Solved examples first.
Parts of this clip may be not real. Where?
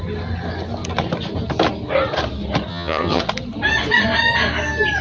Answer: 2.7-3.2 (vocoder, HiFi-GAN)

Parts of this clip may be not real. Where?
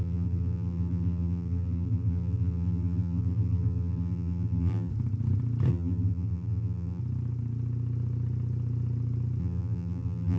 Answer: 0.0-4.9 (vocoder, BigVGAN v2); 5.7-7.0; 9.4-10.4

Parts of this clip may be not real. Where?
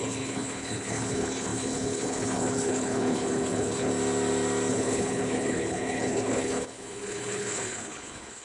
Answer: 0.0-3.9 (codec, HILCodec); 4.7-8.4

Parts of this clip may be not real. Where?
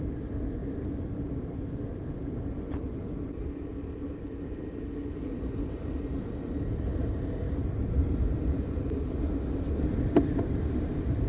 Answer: none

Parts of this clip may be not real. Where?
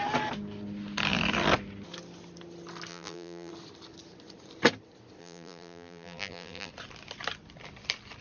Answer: 2.9-3.5 (vocoder, BigVGAN v2); 5.2-6.7